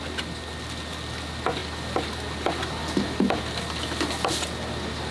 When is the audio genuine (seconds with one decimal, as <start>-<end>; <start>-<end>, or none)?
0.0-5.1